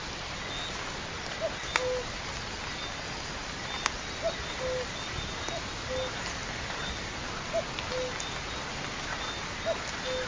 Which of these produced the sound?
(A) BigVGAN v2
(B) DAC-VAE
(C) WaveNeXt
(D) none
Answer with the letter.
D